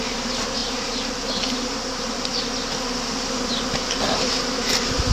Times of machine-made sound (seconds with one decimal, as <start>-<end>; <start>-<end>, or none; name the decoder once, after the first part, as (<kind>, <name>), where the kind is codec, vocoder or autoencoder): 0.6-1.1 (vocoder, BigVGAN v2)